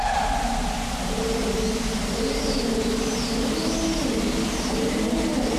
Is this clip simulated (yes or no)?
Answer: no